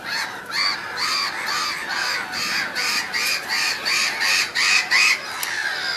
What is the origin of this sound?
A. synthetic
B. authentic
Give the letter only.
B